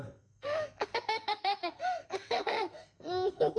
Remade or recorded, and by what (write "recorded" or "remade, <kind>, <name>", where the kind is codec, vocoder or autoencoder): remade, codec, SNAC